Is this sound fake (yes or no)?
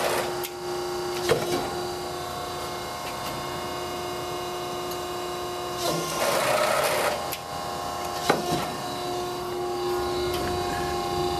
no